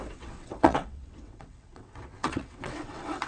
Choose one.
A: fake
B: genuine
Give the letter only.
A